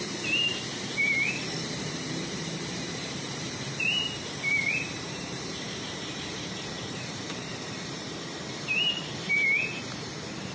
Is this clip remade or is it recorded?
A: remade